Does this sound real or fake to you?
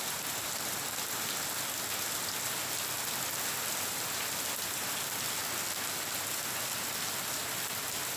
real